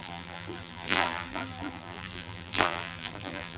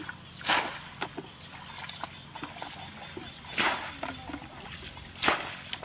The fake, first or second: first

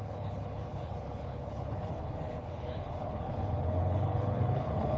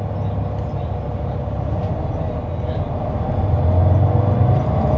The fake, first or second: first